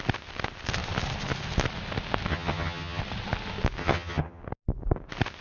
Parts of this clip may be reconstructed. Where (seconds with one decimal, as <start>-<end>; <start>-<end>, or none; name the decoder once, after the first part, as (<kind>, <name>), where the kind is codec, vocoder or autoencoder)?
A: 2.3-3.0 (vocoder, HiFi-GAN); 3.8-4.4